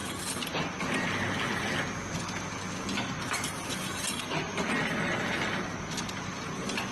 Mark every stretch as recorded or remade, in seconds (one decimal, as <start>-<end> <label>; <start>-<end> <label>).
0.0-6.9 recorded